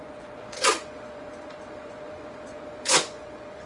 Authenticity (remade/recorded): remade